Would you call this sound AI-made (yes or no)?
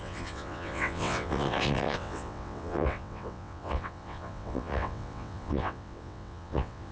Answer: yes